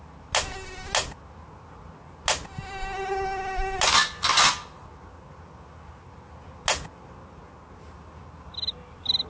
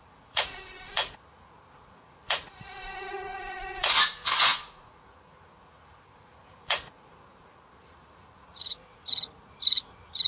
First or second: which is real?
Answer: first